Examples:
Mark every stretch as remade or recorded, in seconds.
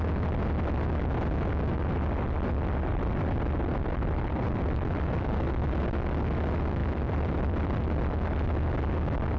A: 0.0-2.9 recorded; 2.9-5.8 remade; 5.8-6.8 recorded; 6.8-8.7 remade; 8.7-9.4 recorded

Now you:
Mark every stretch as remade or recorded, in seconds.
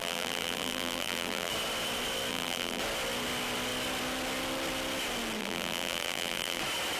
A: 0.0-1.5 remade; 1.5-2.3 recorded; 2.3-2.8 remade; 2.8-5.4 recorded; 5.4-6.6 remade; 6.6-7.0 recorded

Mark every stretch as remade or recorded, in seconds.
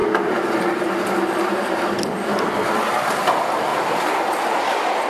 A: 0.0-2.3 remade; 2.3-3.7 recorded; 3.7-4.6 remade; 4.6-5.1 recorded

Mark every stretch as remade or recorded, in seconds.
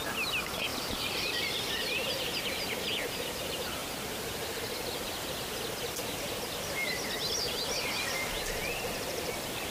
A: 0.0-0.7 recorded; 0.7-3.4 remade; 3.4-3.8 recorded; 3.8-4.6 remade; 4.6-9.7 recorded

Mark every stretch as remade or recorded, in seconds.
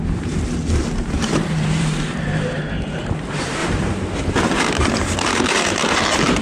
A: 0.0-6.4 remade